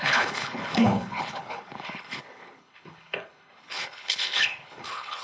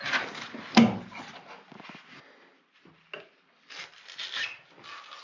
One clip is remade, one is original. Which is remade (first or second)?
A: first